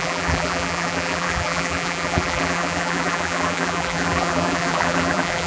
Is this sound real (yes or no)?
no